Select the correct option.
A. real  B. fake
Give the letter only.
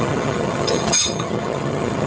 B